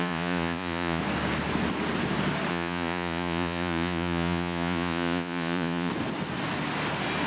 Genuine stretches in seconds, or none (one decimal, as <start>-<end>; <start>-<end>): 1.0-2.5; 5.9-7.3